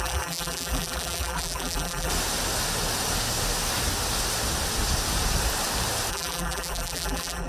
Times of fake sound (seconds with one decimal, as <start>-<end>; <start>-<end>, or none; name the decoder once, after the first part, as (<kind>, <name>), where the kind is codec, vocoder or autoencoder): 0.0-2.1 (vocoder, BigVGAN v2); 6.1-7.5